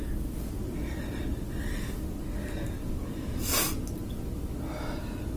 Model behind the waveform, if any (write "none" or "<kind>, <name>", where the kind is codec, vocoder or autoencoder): none